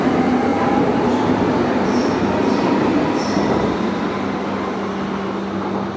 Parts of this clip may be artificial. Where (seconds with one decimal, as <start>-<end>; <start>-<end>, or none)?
0.5-4.1